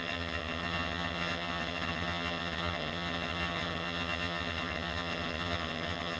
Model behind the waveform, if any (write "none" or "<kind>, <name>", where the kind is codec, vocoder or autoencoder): vocoder, HiFi-GAN